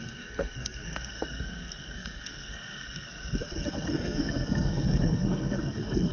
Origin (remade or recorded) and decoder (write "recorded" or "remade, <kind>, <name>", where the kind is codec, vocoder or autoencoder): remade, codec, SNAC